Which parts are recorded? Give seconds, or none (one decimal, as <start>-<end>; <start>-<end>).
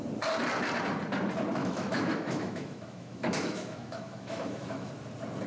0.0-1.6; 4.9-5.5